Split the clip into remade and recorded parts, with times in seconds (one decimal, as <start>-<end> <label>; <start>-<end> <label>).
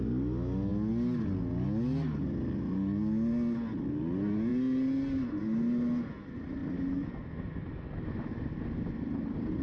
0.0-9.6 recorded